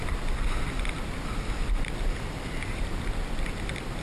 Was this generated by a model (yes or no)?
no